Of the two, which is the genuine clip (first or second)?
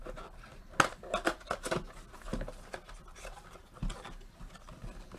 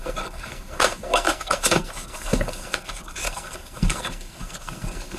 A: first